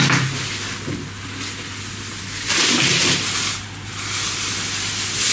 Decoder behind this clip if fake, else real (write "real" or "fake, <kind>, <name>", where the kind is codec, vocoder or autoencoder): real